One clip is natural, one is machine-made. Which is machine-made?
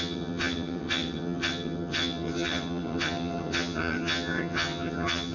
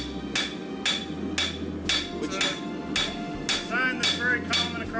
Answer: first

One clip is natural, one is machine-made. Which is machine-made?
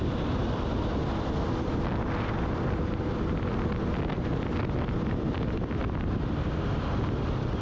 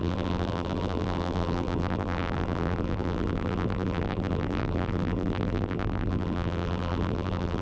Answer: second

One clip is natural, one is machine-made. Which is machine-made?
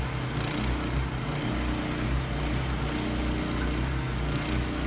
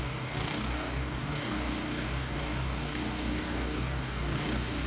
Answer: second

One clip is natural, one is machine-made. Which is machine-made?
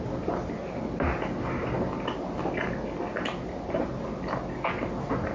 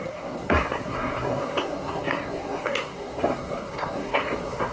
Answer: second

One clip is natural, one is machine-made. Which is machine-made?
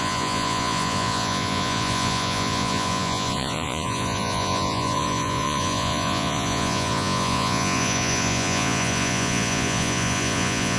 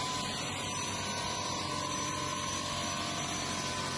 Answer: first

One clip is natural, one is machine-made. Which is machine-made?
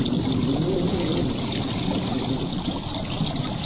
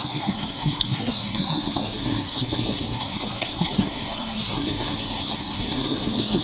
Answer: second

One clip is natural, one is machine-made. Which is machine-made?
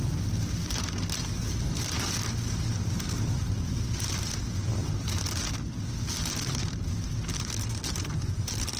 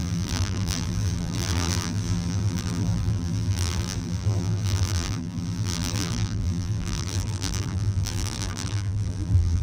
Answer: second